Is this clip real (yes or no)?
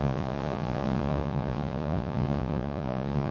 no